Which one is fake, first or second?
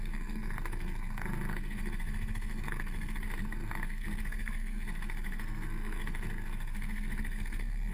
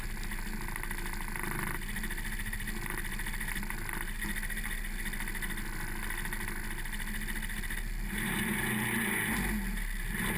first